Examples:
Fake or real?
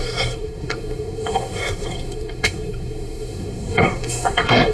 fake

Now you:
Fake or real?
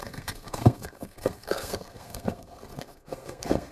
fake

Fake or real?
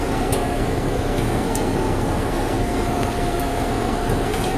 fake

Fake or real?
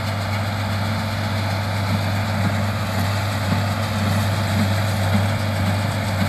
real